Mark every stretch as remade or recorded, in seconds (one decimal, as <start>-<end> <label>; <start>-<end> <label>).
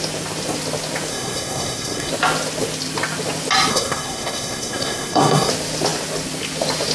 0.0-1.1 recorded; 1.1-2.1 remade; 2.1-3.7 recorded; 3.7-5.5 remade; 5.5-6.9 recorded